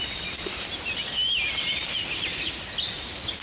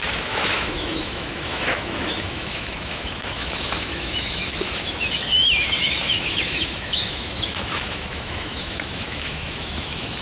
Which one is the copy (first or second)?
second